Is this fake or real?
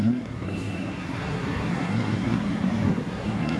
fake